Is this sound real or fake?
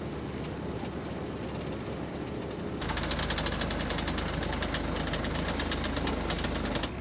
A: real